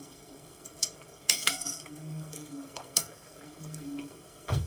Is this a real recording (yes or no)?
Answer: no